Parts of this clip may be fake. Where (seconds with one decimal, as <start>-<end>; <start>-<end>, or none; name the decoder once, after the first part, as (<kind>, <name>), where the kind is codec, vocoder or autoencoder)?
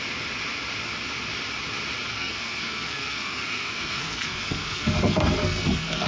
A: 2.1-6.1 (codec, SNAC)